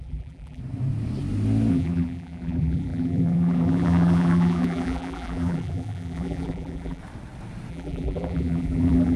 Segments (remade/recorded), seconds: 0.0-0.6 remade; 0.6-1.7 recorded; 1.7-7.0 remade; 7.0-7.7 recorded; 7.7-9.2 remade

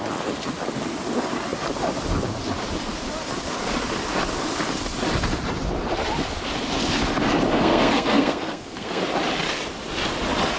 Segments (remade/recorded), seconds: 0.0-7.5 recorded; 7.5-9.0 remade; 9.0-10.6 recorded

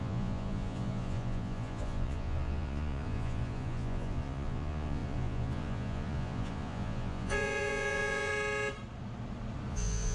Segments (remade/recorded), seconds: 0.0-8.3 remade; 8.3-9.7 recorded; 9.7-10.1 remade

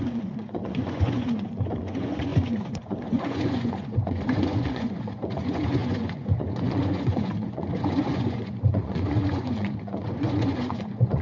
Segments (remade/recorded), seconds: 0.0-11.2 remade

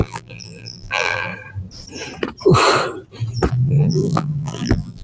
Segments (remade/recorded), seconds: 0.0-1.3 remade; 1.3-3.5 recorded; 3.5-5.0 remade

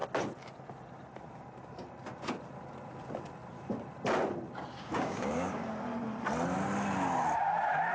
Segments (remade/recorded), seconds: 0.0-4.7 recorded; 4.7-5.7 remade; 5.7-7.9 recorded

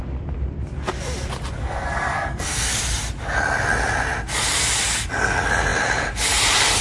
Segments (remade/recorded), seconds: 0.0-1.6 recorded; 1.6-2.8 remade; 2.8-6.8 recorded